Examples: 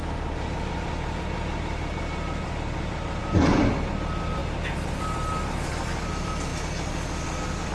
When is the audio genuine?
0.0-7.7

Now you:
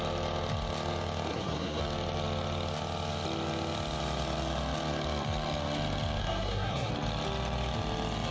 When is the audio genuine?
0.0-1.3; 1.8-6.2; 6.9-8.3